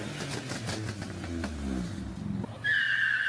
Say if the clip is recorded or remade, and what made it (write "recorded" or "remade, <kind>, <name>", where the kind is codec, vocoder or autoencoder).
recorded